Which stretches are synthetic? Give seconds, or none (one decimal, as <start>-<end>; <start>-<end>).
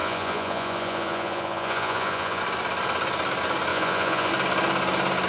0.0-2.4; 3.7-4.3